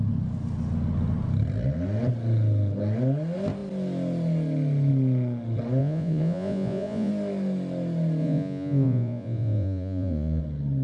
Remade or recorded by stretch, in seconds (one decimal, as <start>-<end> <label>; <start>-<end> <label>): 0.0-5.8 recorded; 5.8-7.1 remade; 7.1-8.2 recorded; 8.2-10.4 remade; 10.4-10.8 recorded